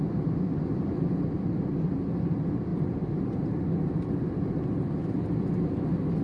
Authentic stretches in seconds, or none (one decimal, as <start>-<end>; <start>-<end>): 0.0-2.7; 3.6-6.2